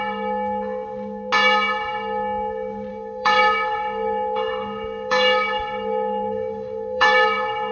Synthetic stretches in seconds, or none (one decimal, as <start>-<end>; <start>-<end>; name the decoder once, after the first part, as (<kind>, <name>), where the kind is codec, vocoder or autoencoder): 2.9-7.7 (codec, DAC)